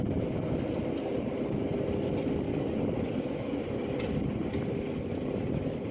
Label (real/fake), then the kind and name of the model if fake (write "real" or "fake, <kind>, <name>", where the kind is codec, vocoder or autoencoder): real